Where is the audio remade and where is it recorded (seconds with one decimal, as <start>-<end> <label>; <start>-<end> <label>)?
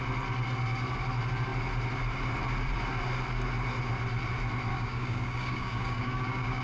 0.0-4.7 recorded; 4.7-6.6 remade